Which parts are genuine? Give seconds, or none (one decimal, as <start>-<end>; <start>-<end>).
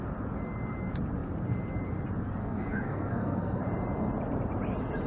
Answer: 0.0-2.4; 3.6-5.1